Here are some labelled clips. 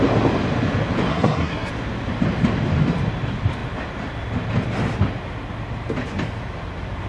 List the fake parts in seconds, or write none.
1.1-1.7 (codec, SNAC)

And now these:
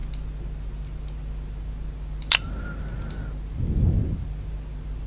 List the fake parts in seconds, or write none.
none

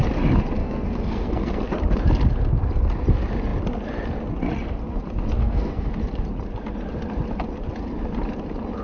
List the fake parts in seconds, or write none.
0.6-1.6 (codec, SNAC); 5.4-5.9

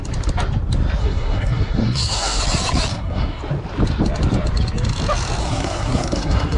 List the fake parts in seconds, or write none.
1.0-2.4 (codec, SNAC); 2.9-3.4; 5.4-6.6

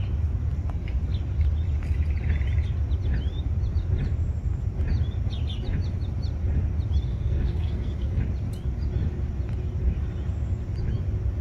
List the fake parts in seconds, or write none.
7.1-8.2 (codec, SNAC)

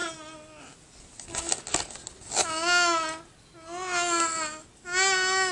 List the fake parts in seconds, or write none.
none